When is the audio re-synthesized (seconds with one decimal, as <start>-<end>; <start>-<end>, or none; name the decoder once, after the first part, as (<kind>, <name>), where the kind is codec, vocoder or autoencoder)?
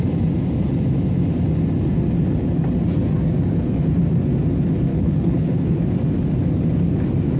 4.9-5.8 (codec, HILCodec)